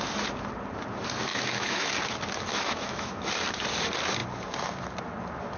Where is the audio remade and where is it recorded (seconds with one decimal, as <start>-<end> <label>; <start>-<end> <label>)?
0.0-1.3 recorded; 1.3-1.9 remade; 1.9-2.5 recorded; 2.5-3.2 remade; 3.2-5.6 recorded